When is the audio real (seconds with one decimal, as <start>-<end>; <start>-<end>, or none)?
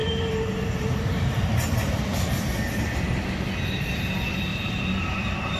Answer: 1.6-4.5